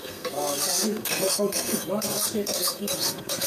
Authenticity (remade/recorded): remade